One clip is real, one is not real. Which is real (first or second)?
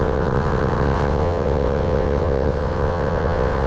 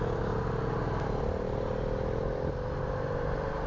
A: second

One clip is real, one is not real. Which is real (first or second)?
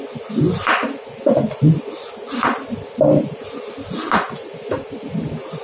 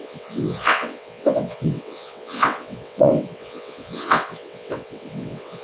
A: first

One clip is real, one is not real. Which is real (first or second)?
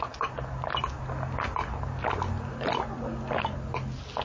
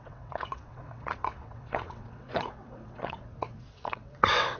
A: first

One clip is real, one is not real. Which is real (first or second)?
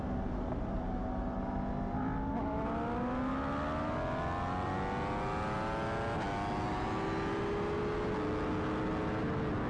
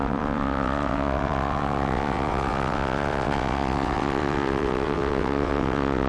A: first